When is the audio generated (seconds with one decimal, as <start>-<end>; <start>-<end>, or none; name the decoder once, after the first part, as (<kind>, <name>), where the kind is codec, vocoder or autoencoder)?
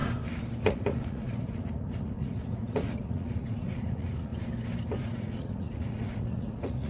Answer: 0.6-4.3 (vocoder, Vocos); 5.0-6.9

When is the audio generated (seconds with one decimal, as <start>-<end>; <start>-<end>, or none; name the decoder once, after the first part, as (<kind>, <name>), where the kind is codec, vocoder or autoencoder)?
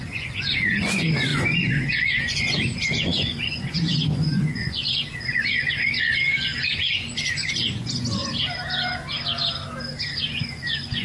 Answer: 0.0-8.2 (vocoder, Vocos); 10.1-11.0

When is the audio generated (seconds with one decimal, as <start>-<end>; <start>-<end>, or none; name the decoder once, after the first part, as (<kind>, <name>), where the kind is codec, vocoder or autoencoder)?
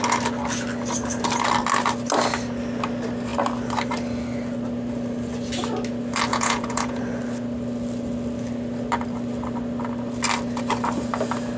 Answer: 6.3-7.0 (vocoder, Vocos)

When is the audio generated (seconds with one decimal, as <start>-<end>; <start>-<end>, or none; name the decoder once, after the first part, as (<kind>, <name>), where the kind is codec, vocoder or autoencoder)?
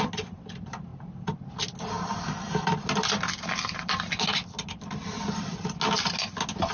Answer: none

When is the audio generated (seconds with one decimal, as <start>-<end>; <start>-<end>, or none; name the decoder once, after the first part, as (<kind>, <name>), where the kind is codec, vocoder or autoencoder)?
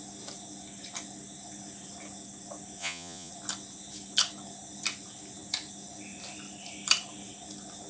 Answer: 2.8-3.3 (vocoder, Vocos)